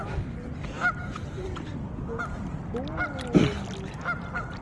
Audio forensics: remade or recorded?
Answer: recorded